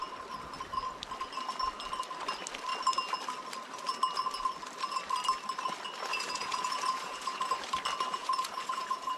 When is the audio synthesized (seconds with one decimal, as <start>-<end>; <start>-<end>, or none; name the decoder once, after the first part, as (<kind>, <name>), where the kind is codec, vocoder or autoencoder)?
6.1-7.5 (vocoder, Vocos); 8.1-9.2